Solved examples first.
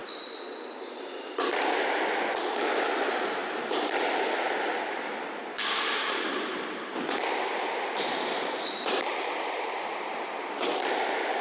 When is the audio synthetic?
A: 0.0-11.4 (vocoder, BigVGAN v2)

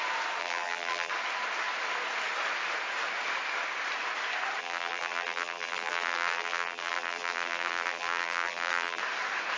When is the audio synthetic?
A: 0.4-1.1 (vocoder, BigVGAN v2); 4.6-9.0